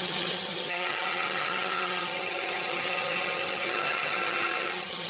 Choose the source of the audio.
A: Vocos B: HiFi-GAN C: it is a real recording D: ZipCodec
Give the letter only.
B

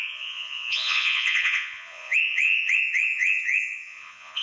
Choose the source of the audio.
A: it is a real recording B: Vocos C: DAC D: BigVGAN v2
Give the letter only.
B